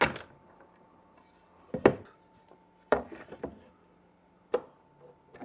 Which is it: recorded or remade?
recorded